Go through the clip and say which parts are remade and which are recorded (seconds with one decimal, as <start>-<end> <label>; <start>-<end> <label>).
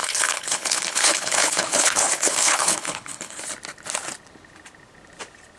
0.0-3.4 remade; 3.4-5.6 recorded